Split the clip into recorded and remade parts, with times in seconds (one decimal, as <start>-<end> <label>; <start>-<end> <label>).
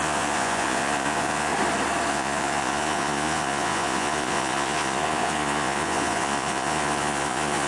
0.0-1.5 remade; 1.5-2.1 recorded; 2.1-7.7 remade